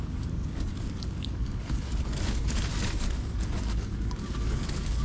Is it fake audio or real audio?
fake